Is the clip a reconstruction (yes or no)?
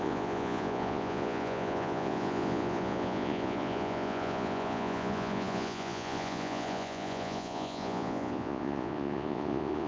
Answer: yes